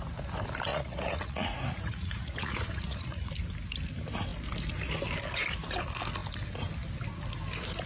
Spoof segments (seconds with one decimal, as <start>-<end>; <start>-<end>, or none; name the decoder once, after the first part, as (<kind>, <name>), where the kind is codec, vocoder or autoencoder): 0.7-3.3 (vocoder, Vocos)